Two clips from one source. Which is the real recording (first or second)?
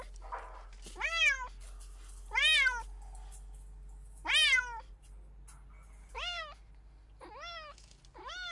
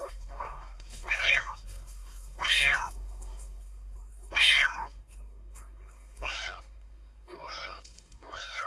first